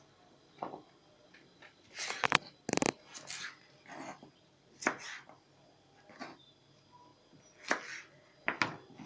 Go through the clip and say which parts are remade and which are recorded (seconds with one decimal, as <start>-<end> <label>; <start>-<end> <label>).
0.0-3.1 recorded; 3.1-6.4 remade; 6.4-9.1 recorded